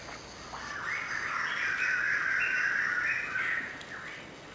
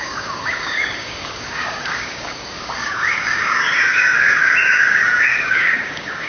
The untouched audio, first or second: first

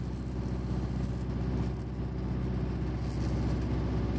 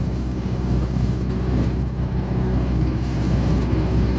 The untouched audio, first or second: first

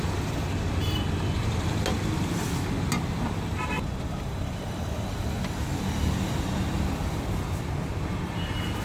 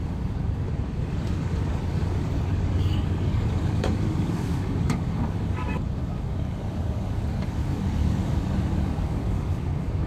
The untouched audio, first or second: first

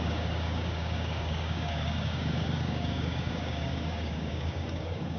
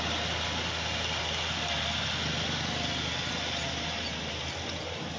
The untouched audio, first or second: second